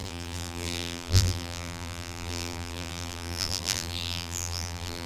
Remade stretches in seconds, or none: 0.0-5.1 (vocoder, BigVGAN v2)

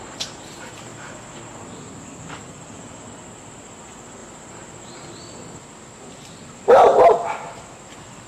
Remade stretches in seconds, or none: 0.9-3.1 (vocoder, BigVGAN v2)

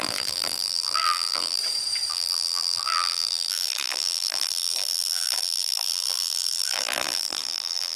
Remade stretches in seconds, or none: 0.0-1.6 (vocoder, BigVGAN v2); 2.1-8.0

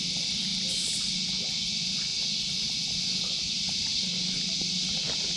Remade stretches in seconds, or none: 0.0-0.5 (vocoder, BigVGAN v2); 1.6-2.1; 3.5-5.4

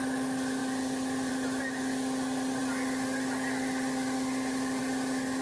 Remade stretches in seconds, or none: none

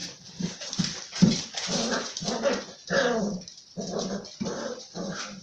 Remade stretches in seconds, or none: 3.2-5.4 (vocoder, BigVGAN v2)

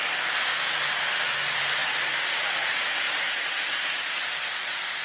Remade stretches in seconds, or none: none